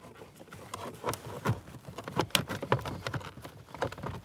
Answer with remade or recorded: recorded